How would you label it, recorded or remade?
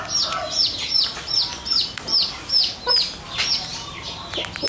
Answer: recorded